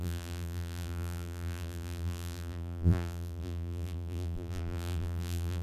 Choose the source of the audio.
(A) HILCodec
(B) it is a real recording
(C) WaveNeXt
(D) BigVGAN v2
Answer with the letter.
D